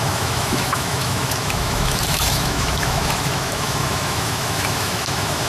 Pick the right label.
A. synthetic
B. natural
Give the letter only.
A